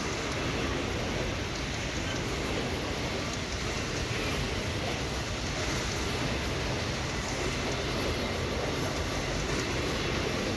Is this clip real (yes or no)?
yes